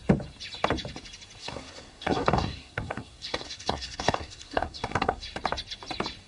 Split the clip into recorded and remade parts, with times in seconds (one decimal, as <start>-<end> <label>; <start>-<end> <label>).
0.0-1.4 recorded; 1.4-5.2 remade; 5.2-6.3 recorded